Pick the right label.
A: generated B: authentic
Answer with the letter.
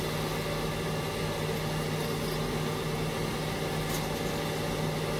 B